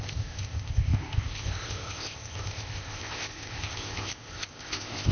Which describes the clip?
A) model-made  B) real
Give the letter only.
A